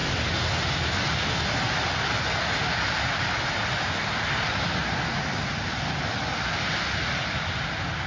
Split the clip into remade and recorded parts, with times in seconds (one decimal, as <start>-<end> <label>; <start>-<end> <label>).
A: 0.0-8.1 recorded